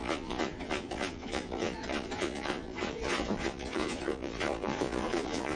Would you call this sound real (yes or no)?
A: no